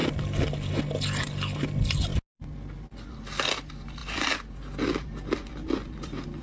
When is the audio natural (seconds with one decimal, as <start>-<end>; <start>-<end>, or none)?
0.0-6.4